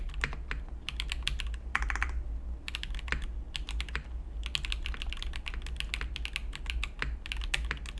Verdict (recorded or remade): recorded